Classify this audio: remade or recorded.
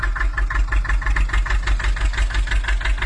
recorded